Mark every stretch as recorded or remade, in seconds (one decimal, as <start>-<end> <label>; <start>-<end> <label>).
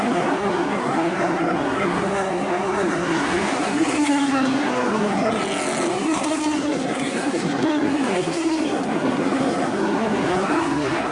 0.0-5.4 remade; 5.4-5.9 recorded; 5.9-11.1 remade